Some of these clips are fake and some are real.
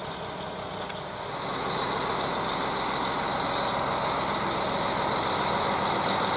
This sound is real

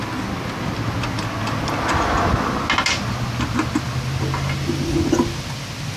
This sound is real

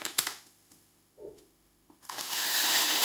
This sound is fake